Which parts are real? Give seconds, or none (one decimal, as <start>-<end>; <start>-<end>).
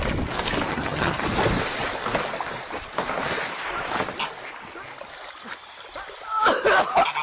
0.0-0.7; 1.2-7.2